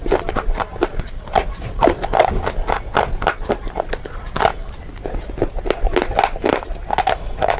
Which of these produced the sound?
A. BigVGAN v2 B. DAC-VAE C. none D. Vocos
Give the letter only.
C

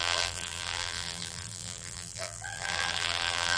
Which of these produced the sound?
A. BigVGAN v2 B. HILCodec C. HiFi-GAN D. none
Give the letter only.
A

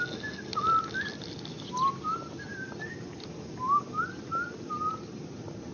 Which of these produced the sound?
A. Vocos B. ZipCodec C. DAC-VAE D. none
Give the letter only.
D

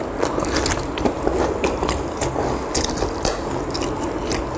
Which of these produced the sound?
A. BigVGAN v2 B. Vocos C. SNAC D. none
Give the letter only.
D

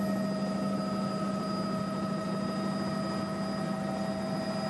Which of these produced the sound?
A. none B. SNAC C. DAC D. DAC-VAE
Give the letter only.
A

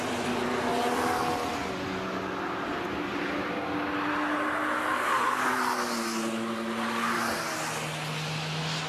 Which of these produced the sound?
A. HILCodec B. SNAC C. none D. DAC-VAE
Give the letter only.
C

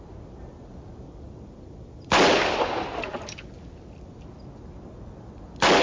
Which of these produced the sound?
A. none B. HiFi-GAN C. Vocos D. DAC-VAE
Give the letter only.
A